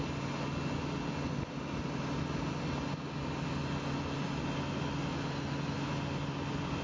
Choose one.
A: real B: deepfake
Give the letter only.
A